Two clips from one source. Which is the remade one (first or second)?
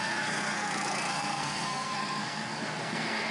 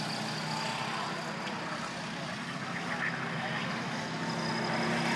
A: first